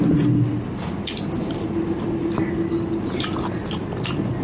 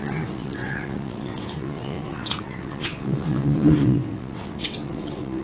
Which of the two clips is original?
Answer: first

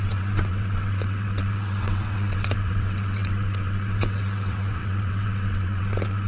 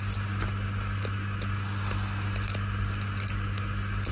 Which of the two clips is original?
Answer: second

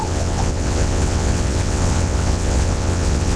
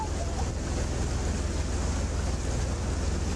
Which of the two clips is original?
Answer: second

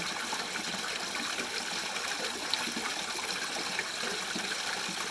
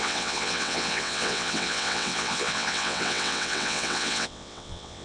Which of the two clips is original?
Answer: first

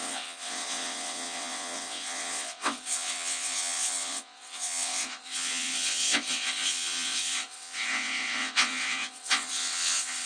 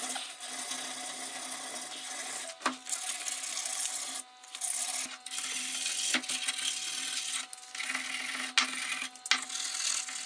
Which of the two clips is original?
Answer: second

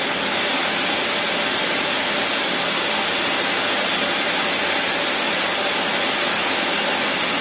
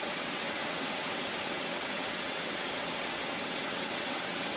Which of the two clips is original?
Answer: first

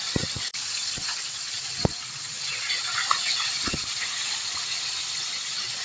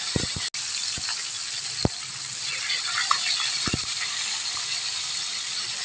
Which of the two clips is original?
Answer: second